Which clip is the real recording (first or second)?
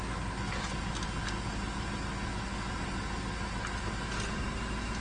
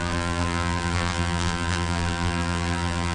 first